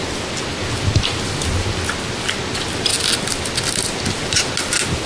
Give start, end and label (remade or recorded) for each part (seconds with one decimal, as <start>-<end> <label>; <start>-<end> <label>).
0.0-5.1 recorded